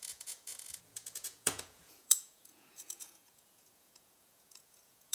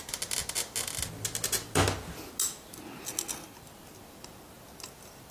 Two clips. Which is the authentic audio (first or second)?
second